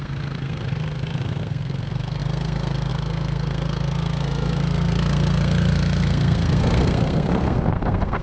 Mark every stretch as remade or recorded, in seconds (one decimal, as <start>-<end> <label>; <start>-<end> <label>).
0.0-8.2 remade